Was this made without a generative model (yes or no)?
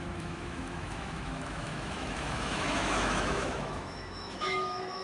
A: no